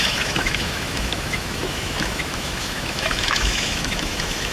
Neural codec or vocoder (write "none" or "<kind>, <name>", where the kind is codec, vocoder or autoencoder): autoencoder, DAC-VAE